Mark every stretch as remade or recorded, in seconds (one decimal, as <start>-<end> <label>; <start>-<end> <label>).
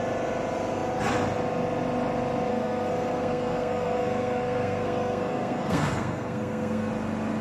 0.0-2.5 recorded; 2.5-6.9 remade; 6.9-7.4 recorded